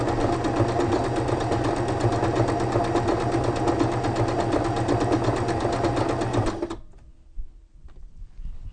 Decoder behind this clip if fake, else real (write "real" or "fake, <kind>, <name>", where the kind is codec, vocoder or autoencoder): real